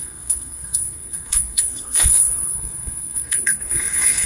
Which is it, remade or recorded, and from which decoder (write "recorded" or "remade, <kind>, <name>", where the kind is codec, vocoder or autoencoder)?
remade, codec, SNAC